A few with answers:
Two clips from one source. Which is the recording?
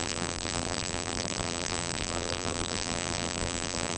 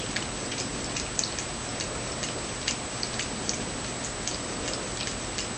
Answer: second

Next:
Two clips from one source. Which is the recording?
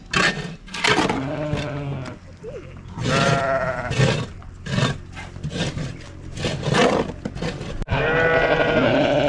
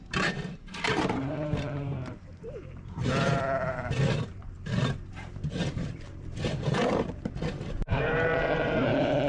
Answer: first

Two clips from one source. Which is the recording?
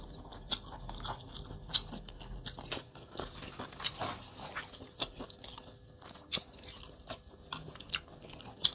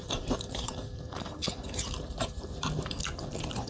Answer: first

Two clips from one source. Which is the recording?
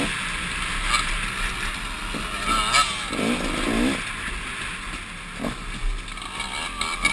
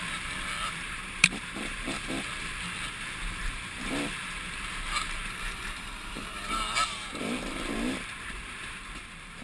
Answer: first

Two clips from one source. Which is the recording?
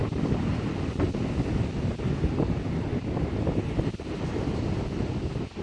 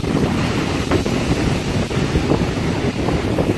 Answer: first